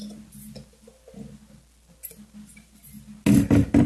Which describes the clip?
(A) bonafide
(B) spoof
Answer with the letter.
A